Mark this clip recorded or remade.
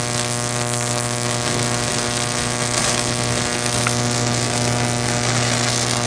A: recorded